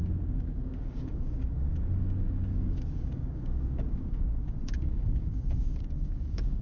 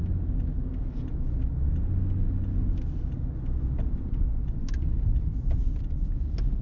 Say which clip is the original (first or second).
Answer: second